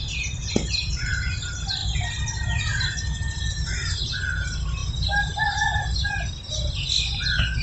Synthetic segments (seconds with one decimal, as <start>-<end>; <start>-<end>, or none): 0.8-1.3; 4.8-6.1